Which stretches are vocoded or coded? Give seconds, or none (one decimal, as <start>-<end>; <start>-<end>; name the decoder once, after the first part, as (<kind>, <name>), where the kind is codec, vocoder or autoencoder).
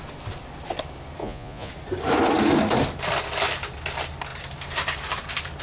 1.2-1.7 (vocoder, Vocos)